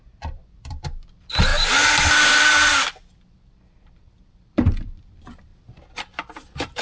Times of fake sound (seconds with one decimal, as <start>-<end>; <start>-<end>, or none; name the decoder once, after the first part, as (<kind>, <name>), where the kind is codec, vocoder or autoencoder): 0.0-1.5 (vocoder, BigVGAN v2); 2.0-5.5; 6.0-6.8